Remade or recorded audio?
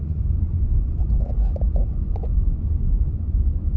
remade